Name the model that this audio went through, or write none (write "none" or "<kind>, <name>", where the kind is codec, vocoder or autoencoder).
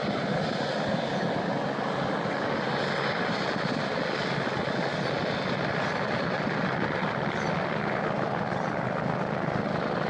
none